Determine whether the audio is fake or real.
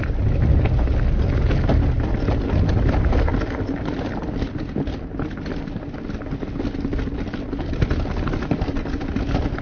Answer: real